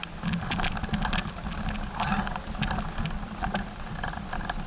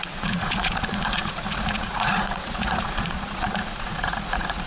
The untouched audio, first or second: first